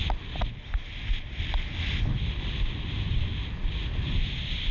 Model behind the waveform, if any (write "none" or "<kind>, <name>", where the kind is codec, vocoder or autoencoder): none